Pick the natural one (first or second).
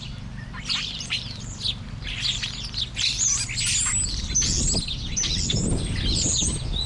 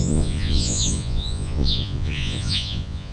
first